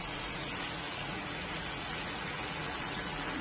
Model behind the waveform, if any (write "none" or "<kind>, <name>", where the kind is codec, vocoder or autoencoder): vocoder, Vocos